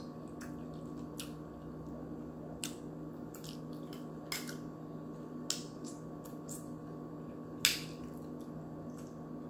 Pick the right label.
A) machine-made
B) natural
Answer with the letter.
B